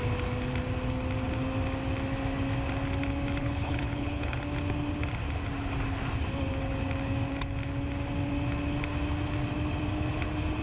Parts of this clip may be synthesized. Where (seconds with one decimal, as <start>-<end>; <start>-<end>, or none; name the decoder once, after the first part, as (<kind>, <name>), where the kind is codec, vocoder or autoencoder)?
3.4-4.4 (codec, HILCodec)